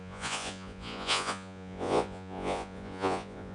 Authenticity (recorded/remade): remade